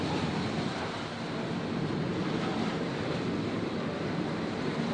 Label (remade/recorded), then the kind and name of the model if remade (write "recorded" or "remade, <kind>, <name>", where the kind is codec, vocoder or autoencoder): recorded